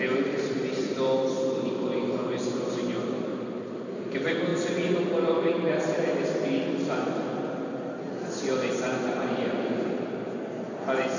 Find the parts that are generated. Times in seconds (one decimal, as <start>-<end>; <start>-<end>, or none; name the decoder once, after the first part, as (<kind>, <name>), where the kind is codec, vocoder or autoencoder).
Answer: 0.0-0.8 (vocoder, BigVGAN v2); 3.6-11.2